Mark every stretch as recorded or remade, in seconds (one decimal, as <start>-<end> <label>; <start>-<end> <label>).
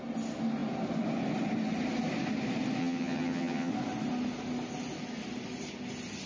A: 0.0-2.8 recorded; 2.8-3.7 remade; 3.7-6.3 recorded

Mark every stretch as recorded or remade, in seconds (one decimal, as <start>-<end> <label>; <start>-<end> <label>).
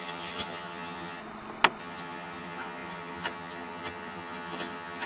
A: 0.0-1.2 remade; 1.2-1.8 recorded; 1.8-5.1 remade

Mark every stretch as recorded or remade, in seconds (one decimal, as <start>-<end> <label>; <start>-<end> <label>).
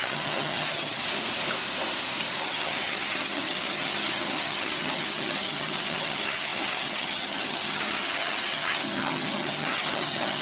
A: 0.0-1.0 remade; 1.0-2.4 recorded; 2.4-10.4 remade